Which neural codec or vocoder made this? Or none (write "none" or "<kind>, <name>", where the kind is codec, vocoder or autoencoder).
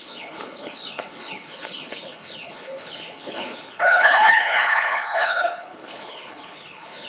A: codec, HILCodec